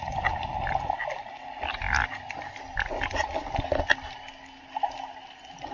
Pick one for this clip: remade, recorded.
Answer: recorded